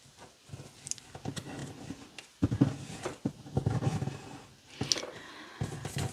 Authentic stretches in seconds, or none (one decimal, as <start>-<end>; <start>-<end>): 0.0-6.1

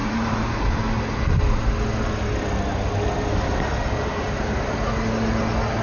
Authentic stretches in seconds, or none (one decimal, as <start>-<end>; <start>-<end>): 0.5-5.8

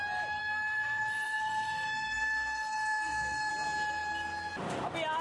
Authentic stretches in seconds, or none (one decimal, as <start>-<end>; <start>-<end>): 0.0-0.4; 3.5-5.2

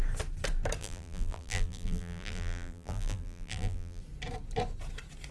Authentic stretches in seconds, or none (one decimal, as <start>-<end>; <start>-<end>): 0.0-0.8; 4.0-5.3

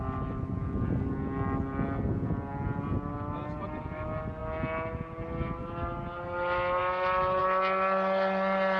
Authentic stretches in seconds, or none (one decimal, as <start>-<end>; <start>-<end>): 0.0-8.8

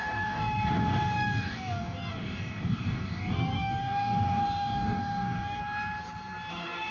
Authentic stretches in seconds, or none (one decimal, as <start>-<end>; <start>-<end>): 5.6-6.5